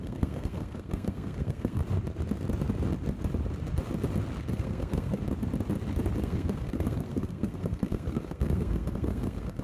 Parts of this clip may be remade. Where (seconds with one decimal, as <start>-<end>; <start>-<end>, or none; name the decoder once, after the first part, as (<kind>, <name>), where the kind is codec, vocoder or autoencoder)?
0.0-1.8 (codec, SNAC); 4.5-5.2; 6.2-9.6

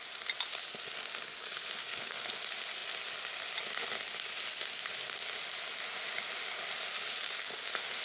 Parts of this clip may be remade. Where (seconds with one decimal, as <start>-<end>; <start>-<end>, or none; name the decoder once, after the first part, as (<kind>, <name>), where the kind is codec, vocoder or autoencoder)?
1.8-2.3 (codec, SNAC)

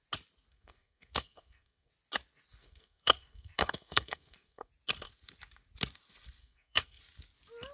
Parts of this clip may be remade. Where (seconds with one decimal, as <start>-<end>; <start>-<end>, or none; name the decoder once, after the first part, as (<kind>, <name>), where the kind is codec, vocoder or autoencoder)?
0.5-1.9 (codec, SNAC); 2.6-4.7; 6.4-7.0

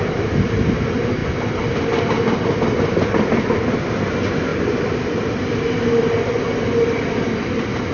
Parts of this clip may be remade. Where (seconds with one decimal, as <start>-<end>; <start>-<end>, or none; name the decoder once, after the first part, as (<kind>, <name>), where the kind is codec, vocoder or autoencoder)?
none

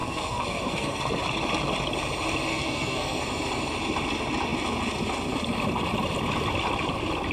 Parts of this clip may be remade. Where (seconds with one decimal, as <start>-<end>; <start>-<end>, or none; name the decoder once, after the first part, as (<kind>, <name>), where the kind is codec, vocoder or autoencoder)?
0.0-1.0 (codec, SNAC); 2.5-3.2

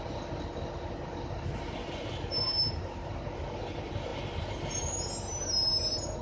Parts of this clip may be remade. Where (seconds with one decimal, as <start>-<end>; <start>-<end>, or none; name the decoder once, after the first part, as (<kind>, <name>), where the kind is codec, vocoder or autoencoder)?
none